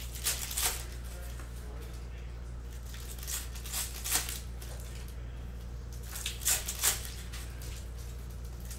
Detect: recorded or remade recorded